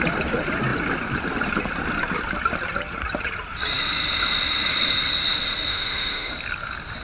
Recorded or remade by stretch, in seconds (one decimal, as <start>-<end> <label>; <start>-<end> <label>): 0.0-5.7 recorded; 5.7-6.3 remade; 6.3-7.0 recorded